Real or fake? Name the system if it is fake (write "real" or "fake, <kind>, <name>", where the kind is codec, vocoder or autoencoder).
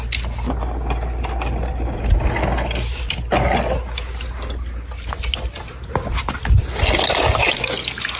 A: real